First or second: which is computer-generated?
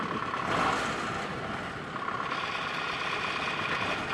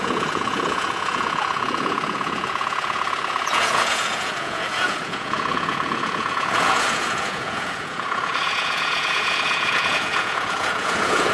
second